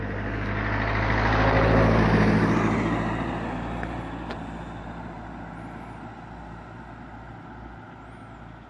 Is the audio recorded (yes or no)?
yes